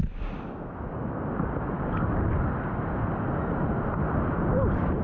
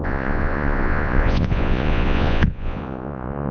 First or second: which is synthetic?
second